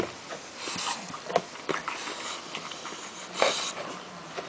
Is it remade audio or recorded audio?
recorded